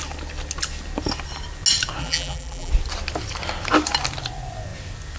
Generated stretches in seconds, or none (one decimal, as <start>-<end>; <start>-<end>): 2.0-2.7